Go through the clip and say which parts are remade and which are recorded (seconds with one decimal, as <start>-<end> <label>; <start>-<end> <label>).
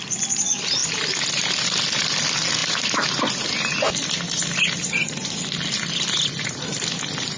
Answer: 0.0-7.4 recorded